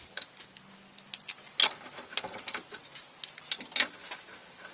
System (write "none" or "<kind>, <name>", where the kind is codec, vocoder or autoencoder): none